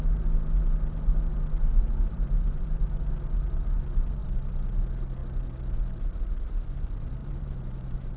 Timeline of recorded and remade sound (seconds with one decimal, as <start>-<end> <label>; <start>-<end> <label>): 0.0-1.6 recorded; 1.6-2.8 remade; 2.8-4.2 recorded; 4.2-4.8 remade; 4.8-7.2 recorded; 7.2-8.2 remade